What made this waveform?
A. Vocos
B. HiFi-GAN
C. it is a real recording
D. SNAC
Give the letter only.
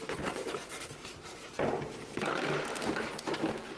C